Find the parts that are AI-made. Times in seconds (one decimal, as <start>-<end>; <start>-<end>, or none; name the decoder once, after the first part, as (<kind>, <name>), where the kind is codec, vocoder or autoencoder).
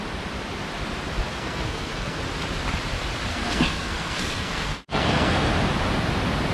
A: 1.3-2.2 (codec, SNAC); 3.3-5.5